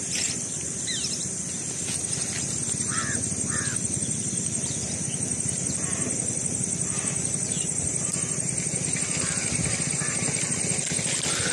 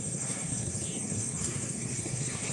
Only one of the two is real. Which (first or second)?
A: first